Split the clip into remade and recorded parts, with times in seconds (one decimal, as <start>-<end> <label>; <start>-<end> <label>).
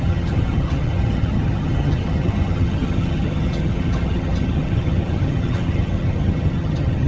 0.0-7.1 remade